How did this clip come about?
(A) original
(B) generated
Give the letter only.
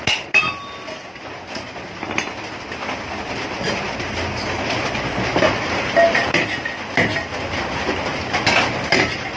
A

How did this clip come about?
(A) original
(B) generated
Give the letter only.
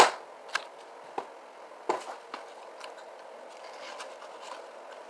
A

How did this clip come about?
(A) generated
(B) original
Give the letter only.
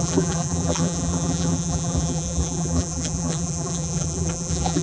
A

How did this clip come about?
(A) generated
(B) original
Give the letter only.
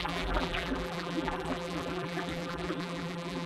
A